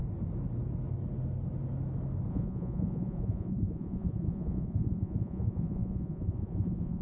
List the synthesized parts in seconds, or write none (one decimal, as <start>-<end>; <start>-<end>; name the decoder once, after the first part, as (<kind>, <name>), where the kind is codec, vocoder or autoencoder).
2.3-7.0 (vocoder, Vocos)

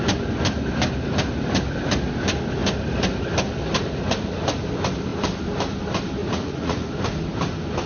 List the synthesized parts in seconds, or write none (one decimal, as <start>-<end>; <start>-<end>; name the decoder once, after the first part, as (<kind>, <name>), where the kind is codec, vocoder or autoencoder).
6.2-6.9 (vocoder, Vocos)

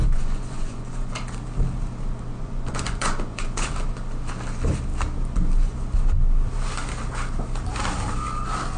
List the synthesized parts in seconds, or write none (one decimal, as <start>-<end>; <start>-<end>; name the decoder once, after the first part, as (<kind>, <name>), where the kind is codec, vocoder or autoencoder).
0.0-1.1 (vocoder, Vocos); 2.3-3.7

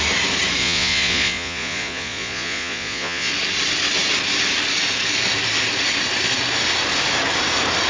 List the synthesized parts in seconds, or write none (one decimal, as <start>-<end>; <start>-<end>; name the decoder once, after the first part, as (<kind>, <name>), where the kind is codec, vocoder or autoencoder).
0.6-3.3 (vocoder, Vocos)

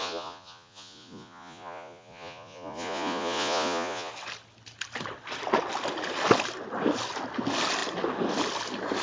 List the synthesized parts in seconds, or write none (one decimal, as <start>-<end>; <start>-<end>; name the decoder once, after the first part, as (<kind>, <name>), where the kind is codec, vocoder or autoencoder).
0.0-4.1 (vocoder, Vocos)

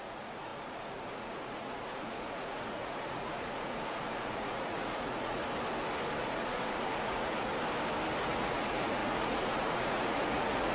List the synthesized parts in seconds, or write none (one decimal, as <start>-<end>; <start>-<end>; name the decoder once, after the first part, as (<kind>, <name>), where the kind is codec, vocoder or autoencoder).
0.0-5.4 (vocoder, Vocos); 6.2-7.5; 8.3-10.7

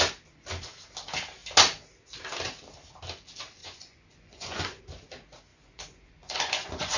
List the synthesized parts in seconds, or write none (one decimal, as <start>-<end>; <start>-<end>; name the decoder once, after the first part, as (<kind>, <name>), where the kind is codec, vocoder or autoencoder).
3.6-4.8 (vocoder, Vocos); 5.5-7.0